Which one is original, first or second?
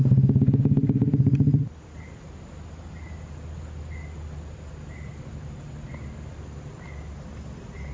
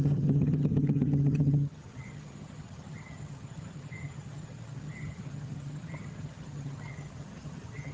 first